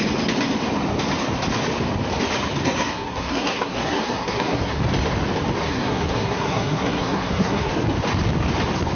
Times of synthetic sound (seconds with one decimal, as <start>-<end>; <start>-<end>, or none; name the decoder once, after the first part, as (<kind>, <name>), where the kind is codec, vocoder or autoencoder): 2.6-4.8 (codec, SNAC); 5.6-7.7